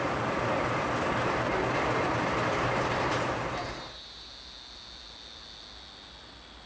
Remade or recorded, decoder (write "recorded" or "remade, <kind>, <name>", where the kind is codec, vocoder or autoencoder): recorded